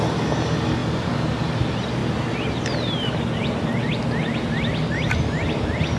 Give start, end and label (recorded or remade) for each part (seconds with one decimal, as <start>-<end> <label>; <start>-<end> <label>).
0.0-6.0 recorded